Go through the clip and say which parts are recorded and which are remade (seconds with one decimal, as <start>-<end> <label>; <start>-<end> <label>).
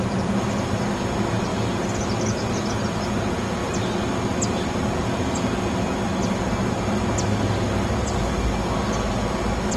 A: 0.0-9.8 recorded